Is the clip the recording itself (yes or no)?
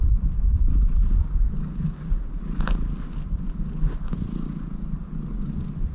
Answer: yes